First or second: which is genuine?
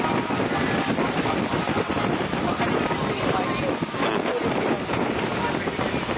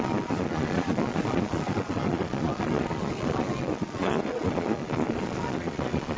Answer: first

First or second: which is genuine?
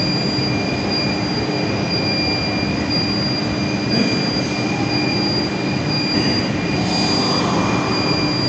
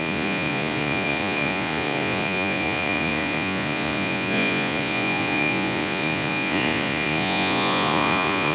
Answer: first